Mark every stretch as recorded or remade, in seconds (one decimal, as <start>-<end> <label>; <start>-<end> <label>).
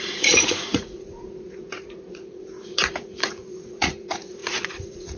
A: 0.0-5.2 remade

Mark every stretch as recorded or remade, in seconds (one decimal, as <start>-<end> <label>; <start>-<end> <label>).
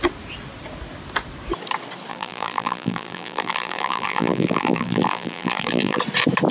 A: 0.0-2.1 recorded; 2.1-6.0 remade; 6.0-6.5 recorded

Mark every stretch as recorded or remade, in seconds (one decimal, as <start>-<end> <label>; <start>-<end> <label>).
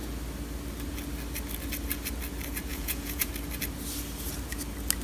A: 0.0-2.7 recorded; 2.7-3.3 remade; 3.3-5.0 recorded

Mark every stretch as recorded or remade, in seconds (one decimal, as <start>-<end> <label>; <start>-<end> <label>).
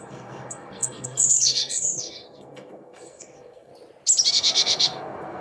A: 0.0-3.7 remade; 3.7-4.3 recorded; 4.3-5.4 remade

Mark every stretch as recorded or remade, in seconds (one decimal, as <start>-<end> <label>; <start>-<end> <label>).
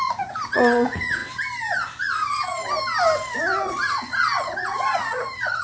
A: 0.0-1.2 remade; 1.2-2.0 recorded; 2.0-2.6 remade; 2.6-4.1 recorded; 4.1-5.6 remade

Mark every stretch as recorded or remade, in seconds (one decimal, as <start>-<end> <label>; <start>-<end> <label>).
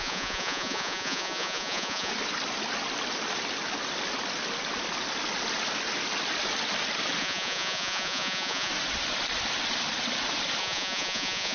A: 0.0-2.1 remade; 2.1-7.2 recorded; 7.2-8.7 remade; 8.7-10.6 recorded; 10.6-11.5 remade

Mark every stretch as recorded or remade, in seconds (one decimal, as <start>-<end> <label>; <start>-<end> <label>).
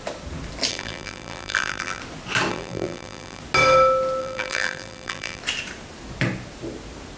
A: 0.0-0.7 recorded; 0.7-2.0 remade; 2.0-2.5 recorded; 2.5-3.4 remade; 3.4-4.2 recorded; 4.2-5.4 remade; 5.4-7.2 recorded